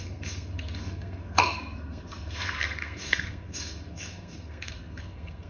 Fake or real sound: fake